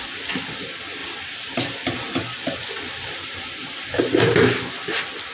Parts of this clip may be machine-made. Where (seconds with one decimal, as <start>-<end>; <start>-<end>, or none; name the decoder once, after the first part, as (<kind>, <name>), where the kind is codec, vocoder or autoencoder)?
1.0-4.2 (vocoder, BigVGAN v2)